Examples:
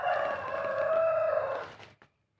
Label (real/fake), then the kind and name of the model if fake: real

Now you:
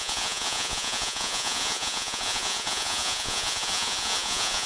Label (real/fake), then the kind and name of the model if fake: fake, vocoder, Vocos